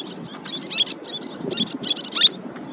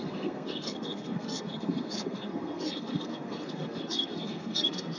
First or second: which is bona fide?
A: first